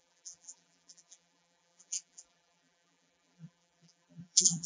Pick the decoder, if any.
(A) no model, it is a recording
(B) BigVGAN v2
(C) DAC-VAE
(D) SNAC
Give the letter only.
B